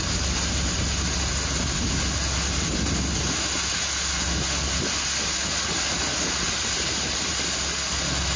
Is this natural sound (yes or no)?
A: yes